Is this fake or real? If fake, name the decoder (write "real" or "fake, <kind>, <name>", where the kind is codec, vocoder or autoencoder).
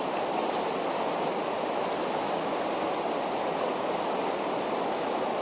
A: real